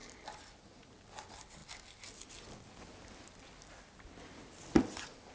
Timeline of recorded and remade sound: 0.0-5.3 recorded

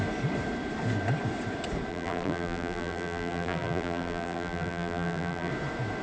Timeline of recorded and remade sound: 0.0-1.9 recorded; 1.9-5.5 remade; 5.5-6.0 recorded

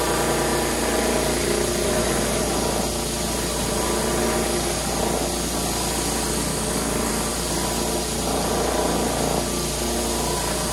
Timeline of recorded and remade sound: 0.0-6.5 recorded; 6.5-7.1 remade; 7.1-10.7 recorded